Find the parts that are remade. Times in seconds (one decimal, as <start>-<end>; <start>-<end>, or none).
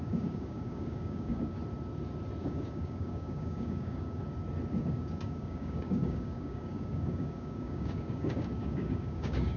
0.0-1.6; 2.4-4.2; 4.7-9.6